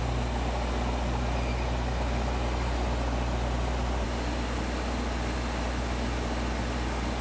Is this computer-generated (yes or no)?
no